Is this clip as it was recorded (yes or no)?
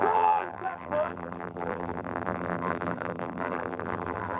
no